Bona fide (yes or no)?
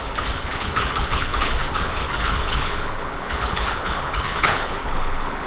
no